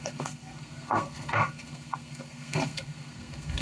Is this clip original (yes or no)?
no